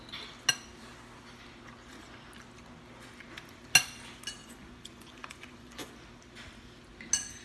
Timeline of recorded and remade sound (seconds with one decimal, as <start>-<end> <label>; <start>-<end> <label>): 0.0-4.4 recorded; 4.4-5.9 remade; 5.9-7.4 recorded